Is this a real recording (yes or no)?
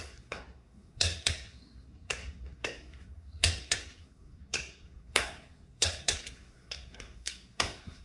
no